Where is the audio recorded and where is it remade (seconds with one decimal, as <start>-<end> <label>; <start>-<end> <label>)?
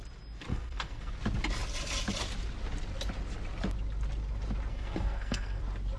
0.0-0.5 recorded; 0.5-1.1 remade; 1.1-4.7 recorded; 4.7-5.6 remade; 5.6-6.0 recorded